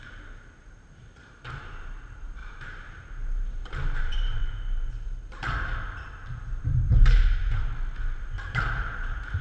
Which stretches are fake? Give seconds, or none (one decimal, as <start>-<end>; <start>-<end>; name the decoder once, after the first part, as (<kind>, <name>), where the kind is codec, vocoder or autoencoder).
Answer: 0.0-7.6 (vocoder, BigVGAN v2); 8.2-9.4